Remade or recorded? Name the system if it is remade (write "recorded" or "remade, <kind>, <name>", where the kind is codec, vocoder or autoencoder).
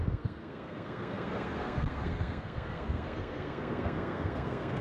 remade, codec, SNAC